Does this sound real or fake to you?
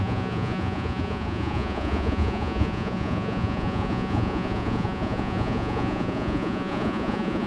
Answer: fake